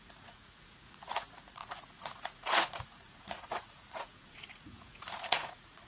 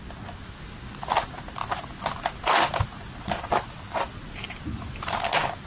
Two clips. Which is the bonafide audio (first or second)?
second